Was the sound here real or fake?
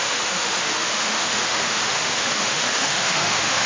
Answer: fake